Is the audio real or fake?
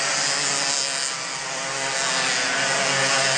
real